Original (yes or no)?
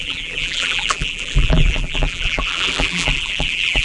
no